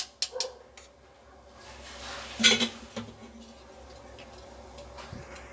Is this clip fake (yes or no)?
no